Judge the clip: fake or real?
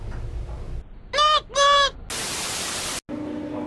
real